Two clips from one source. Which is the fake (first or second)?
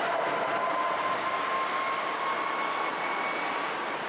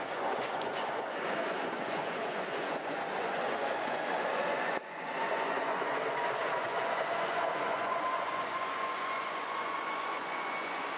second